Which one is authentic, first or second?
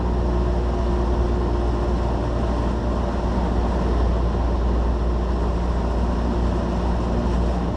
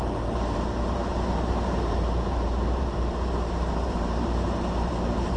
first